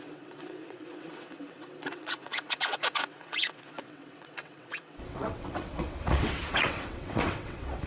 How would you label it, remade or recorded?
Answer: remade